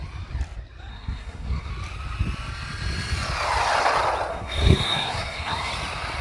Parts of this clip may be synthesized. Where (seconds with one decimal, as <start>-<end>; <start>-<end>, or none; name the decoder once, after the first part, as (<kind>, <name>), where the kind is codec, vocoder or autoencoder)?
0.9-1.7 (codec, SNAC); 4.3-5.7